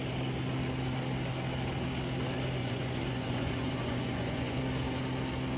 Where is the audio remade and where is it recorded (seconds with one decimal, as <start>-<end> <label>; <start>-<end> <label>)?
0.0-2.6 recorded; 2.6-4.6 remade; 4.6-5.6 recorded